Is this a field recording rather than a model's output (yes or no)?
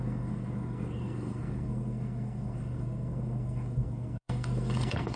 no